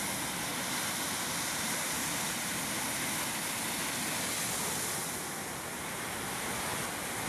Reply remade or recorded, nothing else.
recorded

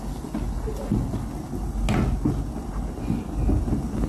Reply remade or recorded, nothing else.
recorded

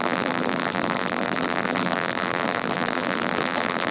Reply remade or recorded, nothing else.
remade